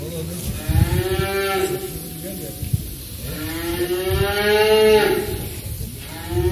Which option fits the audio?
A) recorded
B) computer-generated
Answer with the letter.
A